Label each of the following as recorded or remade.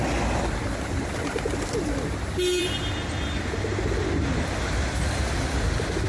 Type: recorded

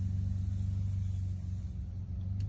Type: recorded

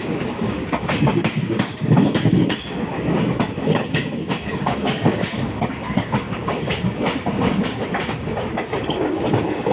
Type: remade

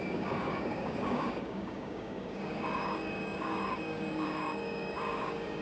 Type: remade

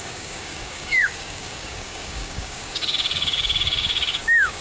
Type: remade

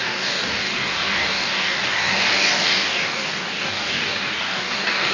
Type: remade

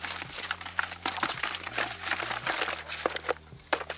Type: recorded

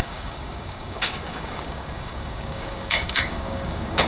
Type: remade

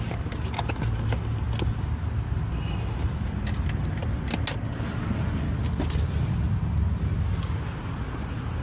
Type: recorded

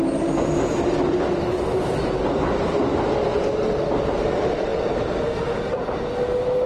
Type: recorded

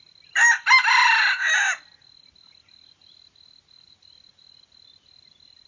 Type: recorded